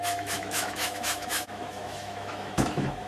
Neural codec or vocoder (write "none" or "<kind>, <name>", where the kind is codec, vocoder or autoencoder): autoencoder, DAC-VAE